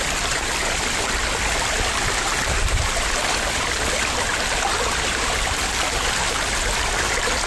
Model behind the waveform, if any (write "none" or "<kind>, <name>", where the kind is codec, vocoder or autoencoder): none